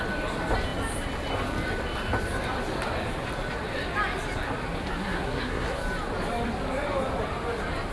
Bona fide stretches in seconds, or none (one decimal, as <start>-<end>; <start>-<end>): 0.0-5.0; 5.8-7.9